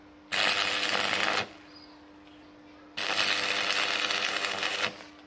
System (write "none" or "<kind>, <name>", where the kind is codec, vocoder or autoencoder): none